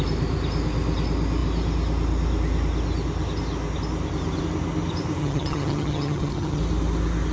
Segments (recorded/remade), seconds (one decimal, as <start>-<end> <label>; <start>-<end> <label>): 0.0-5.2 recorded; 5.2-6.6 remade; 6.6-7.3 recorded